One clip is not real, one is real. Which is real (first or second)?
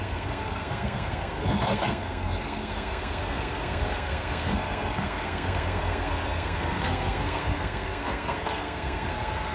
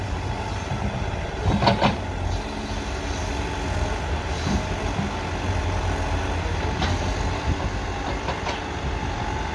second